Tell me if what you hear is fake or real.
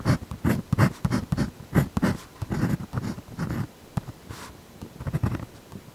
real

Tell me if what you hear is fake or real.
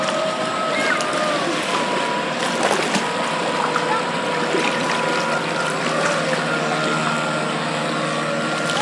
real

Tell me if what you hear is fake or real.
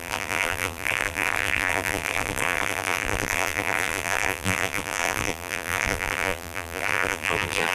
fake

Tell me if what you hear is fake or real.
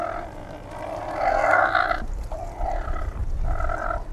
real